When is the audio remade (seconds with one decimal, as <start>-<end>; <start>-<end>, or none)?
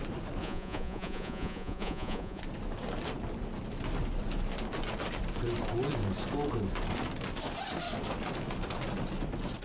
0.4-2.4